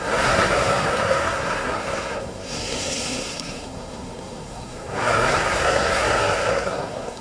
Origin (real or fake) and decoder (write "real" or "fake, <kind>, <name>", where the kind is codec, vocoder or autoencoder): fake, codec, SNAC